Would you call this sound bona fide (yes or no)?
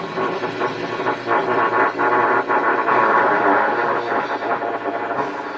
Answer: yes